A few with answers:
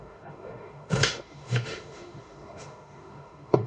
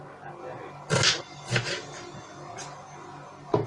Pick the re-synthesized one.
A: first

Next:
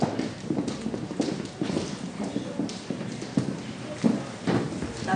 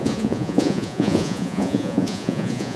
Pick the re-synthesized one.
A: second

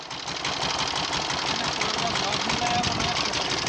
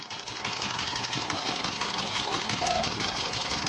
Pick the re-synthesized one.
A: second